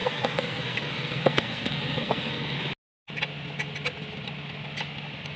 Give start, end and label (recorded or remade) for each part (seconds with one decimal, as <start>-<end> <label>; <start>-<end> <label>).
0.0-2.6 remade; 2.6-5.4 recorded